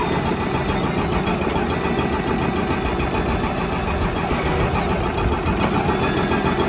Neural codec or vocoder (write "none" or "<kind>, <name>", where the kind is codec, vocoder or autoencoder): none